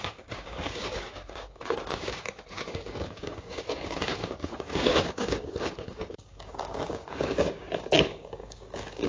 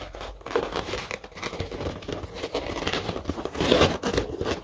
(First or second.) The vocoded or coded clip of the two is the first